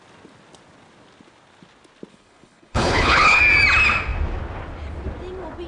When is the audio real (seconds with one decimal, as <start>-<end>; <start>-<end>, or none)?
0.0-2.1; 3.4-5.7